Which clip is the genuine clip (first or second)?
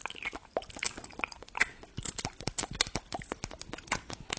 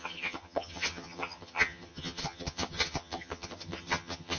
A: first